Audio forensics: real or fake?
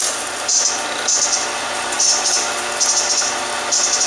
real